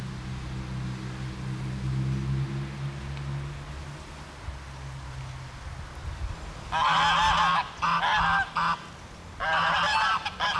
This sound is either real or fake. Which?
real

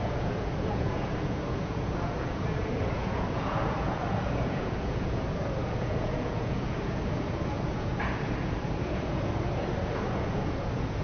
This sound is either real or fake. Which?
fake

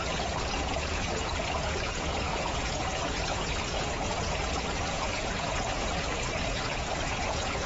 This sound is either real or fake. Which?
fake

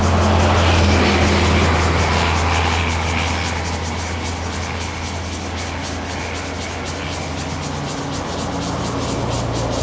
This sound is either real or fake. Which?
real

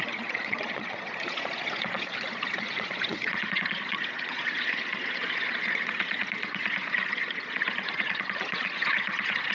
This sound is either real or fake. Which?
fake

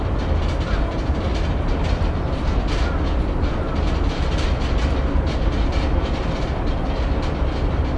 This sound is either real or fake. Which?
real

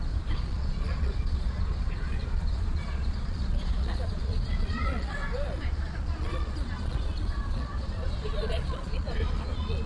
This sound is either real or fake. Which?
fake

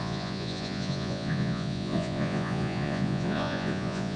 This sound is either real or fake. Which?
fake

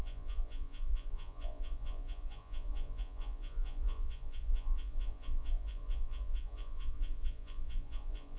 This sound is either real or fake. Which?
fake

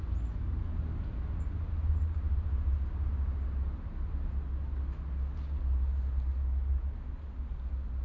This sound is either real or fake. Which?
real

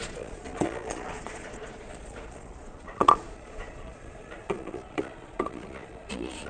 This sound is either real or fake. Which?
fake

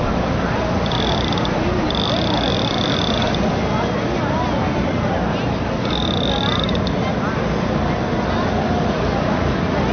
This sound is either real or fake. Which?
real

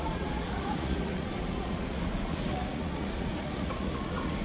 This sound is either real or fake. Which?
fake